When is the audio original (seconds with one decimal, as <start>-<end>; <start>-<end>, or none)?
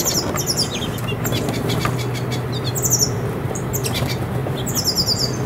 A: 0.0-5.5